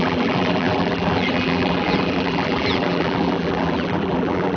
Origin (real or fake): fake